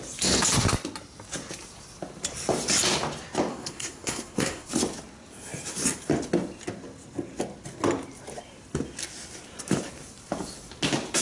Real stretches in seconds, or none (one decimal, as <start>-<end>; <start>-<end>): 0.0-3.5; 4.7-11.2